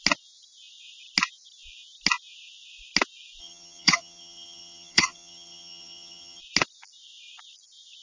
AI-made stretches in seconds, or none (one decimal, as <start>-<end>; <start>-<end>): 3.4-6.4